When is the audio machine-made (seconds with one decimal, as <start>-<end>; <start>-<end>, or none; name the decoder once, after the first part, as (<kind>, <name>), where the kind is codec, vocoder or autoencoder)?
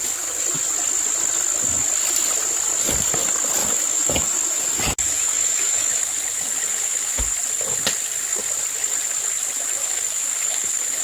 3.6-6.2 (autoencoder, DAC-VAE); 6.7-7.2; 9.8-11.0